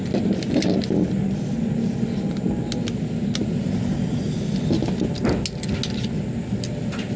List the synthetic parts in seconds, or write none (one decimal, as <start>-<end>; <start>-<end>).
none